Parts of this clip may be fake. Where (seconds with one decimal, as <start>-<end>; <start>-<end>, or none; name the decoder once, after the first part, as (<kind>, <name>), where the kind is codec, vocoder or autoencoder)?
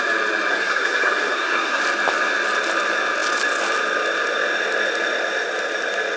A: 0.5-1.8 (codec, SNAC)